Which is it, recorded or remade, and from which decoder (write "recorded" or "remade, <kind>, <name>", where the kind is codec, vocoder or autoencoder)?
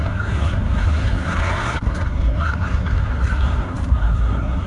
remade, codec, SNAC